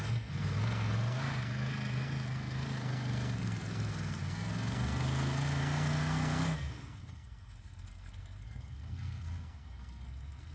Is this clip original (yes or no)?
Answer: no